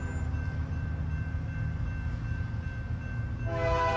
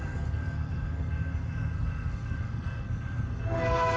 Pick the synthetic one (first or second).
second